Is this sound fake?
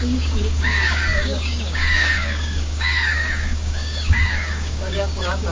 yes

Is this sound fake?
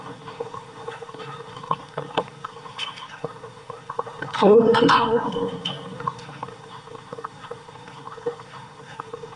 yes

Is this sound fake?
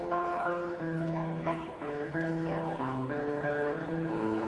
yes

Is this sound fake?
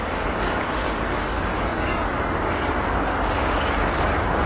yes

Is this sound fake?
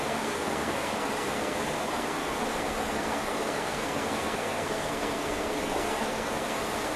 yes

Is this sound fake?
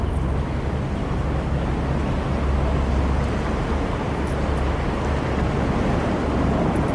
no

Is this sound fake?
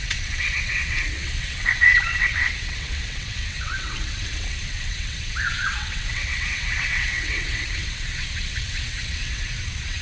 yes